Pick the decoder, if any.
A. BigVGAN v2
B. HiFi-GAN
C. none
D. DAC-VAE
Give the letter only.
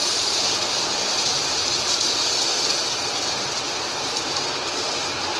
A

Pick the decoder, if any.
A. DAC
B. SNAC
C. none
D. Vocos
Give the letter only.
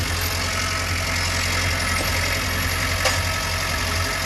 C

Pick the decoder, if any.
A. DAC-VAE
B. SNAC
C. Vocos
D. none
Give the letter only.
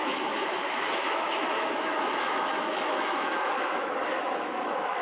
A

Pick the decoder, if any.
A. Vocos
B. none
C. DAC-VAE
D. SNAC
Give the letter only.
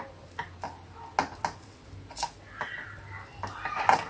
B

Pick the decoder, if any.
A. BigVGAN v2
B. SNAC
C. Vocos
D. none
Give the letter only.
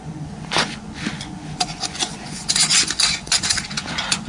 C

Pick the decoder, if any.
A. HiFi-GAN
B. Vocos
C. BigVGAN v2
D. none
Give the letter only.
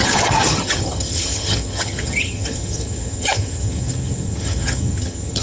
A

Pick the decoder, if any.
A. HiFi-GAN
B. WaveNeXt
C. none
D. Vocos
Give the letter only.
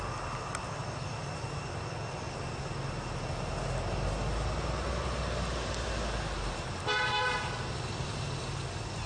C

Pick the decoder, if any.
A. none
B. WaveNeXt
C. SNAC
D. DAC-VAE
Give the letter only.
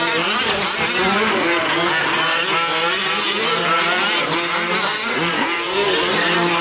A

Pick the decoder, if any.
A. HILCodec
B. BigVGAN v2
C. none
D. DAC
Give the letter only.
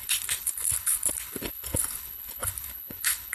A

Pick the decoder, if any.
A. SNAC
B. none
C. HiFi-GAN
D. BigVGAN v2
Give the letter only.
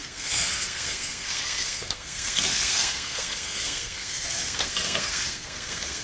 A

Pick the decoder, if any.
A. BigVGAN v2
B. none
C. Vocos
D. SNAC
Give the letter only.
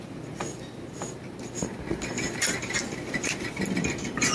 B